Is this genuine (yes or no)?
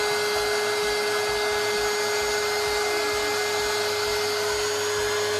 yes